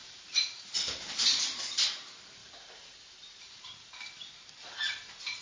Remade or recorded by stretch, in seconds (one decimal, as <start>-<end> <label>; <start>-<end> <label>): 0.0-0.7 remade; 0.7-2.4 recorded; 2.4-3.6 remade; 3.6-5.4 recorded